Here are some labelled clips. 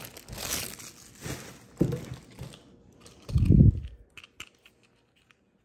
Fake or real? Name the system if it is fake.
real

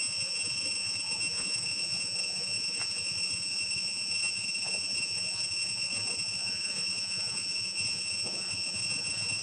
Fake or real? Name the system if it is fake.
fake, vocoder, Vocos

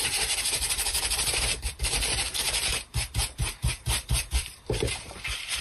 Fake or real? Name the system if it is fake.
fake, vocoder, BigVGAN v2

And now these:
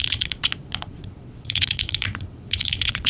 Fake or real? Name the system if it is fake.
fake, vocoder, Vocos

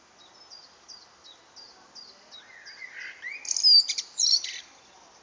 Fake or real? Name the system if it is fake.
real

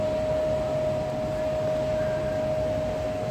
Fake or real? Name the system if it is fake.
real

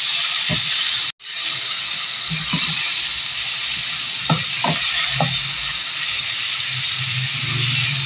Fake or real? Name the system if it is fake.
real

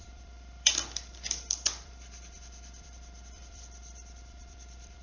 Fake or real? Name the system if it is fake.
fake, vocoder, BigVGAN v2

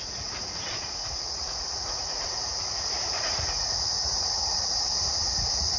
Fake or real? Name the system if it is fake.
fake, vocoder, Vocos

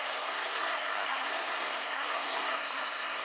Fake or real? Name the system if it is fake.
fake, codec, SNAC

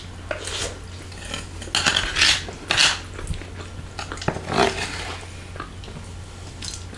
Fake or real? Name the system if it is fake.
real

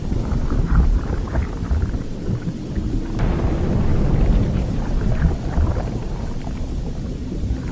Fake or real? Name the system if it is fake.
real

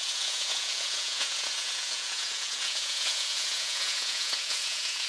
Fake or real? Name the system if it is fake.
fake, vocoder, Vocos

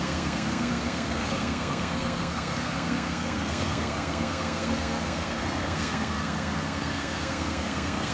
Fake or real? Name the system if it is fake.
fake, codec, SNAC